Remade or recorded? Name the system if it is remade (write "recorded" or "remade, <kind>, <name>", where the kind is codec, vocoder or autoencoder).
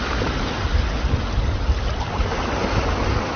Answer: recorded